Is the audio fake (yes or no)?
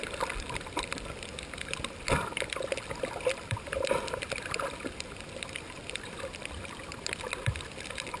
yes